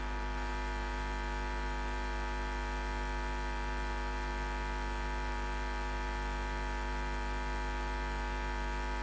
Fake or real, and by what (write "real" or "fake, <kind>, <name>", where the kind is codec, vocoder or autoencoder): real